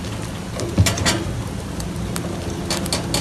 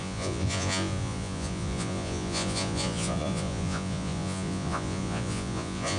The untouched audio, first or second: first